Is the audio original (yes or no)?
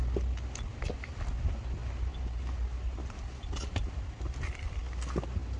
yes